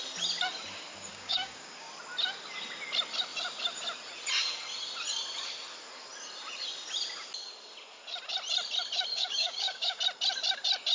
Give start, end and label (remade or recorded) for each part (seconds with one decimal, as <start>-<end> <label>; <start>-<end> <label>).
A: 0.0-1.1 recorded; 1.1-1.9 remade; 1.9-9.1 recorded; 9.1-10.0 remade; 10.0-10.9 recorded